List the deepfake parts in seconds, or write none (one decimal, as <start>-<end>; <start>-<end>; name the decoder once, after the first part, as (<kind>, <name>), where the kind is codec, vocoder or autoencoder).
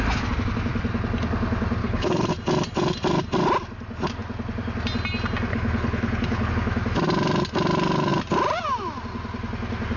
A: 1.8-2.3 (codec, HILCodec); 5.5-6.5